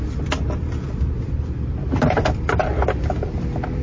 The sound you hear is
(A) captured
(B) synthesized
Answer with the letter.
A